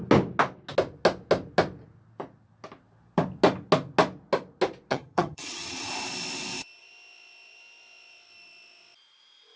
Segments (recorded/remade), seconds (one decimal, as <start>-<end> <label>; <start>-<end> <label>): 0.0-4.9 recorded; 4.9-5.9 remade; 5.9-9.6 recorded